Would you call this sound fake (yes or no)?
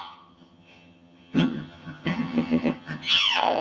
yes